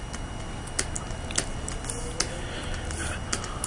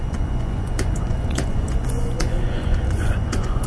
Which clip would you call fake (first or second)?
second